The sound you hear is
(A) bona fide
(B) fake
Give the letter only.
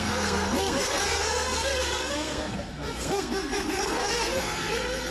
B